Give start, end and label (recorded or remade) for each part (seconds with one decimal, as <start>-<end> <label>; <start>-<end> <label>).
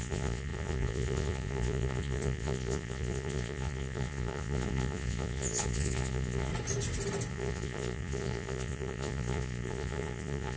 0.0-6.5 remade; 6.5-7.3 recorded; 7.3-10.6 remade